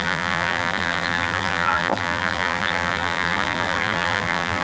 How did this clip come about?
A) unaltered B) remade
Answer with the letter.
B